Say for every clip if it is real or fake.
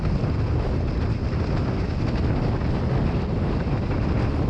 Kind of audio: real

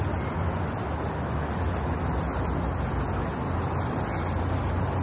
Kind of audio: real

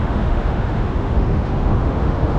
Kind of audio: fake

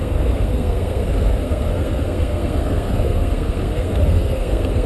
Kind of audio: fake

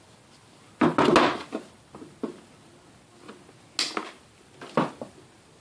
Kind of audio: real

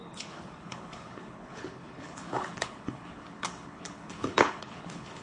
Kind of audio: fake